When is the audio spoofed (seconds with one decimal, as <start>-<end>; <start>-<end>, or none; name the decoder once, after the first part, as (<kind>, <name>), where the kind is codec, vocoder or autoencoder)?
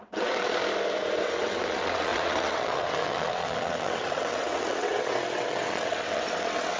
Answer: 0.0-0.6 (vocoder, WaveNeXt); 1.2-6.8